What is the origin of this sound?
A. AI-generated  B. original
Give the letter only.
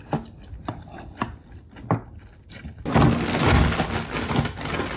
B